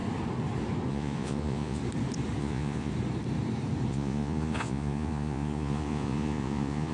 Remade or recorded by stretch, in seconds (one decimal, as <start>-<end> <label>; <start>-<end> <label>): 0.0-0.9 recorded; 0.9-1.8 remade; 1.8-2.4 recorded; 2.4-2.9 remade; 2.9-3.9 recorded; 3.9-6.9 remade